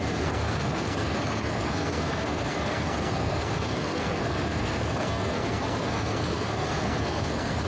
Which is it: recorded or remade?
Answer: remade